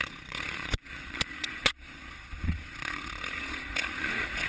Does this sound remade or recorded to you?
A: remade